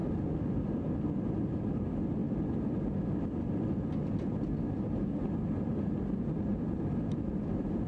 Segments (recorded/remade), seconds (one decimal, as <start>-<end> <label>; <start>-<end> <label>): 0.0-2.2 recorded; 2.2-3.6 remade; 3.6-6.5 recorded; 6.5-7.3 remade; 7.3-7.9 recorded